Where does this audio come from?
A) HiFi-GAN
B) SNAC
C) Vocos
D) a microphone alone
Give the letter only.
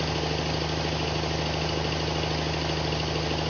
D